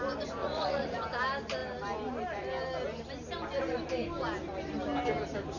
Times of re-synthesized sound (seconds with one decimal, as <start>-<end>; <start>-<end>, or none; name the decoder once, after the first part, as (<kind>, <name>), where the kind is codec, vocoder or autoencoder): 0.4-1.0 (vocoder, Vocos)